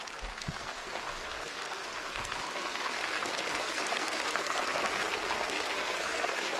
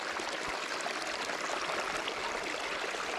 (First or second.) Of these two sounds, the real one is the second